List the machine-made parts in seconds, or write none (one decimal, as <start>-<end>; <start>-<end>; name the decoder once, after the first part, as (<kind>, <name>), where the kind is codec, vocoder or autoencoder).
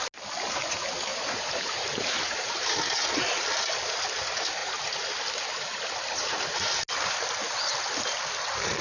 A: 1.1-2.6 (vocoder, BigVGAN v2)